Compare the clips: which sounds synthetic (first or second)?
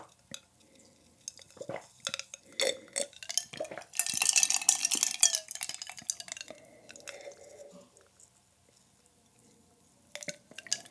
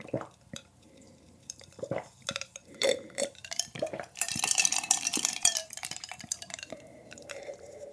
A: second